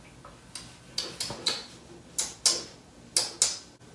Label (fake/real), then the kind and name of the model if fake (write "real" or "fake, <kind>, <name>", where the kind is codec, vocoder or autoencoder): real